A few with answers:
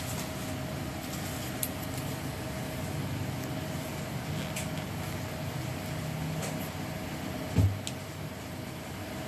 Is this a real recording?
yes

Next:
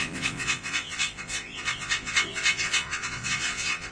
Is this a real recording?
no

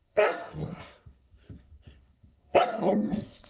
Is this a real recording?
no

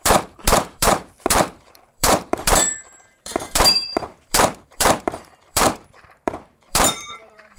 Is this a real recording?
no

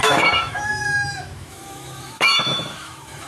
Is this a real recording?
no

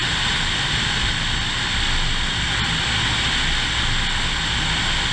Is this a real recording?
yes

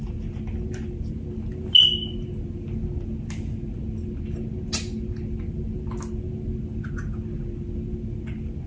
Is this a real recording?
yes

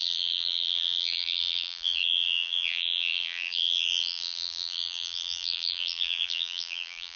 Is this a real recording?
no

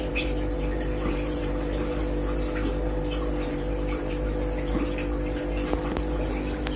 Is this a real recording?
no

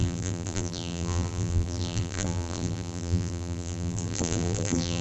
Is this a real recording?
no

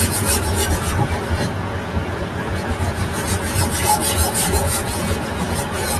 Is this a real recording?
no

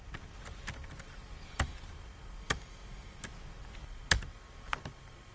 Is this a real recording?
yes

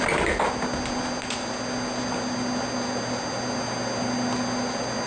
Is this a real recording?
yes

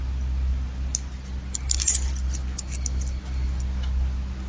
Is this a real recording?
yes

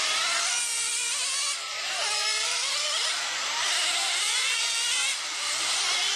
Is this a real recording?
no